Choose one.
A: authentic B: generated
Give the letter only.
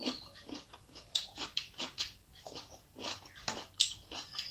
B